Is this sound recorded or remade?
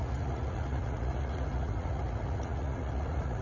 remade